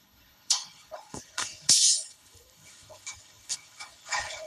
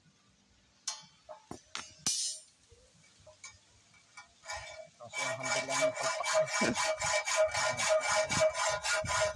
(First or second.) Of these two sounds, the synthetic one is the first